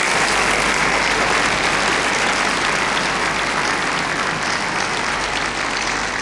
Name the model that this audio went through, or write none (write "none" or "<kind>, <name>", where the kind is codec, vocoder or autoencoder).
none